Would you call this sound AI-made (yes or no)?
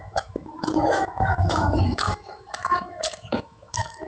yes